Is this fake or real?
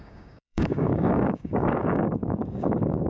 fake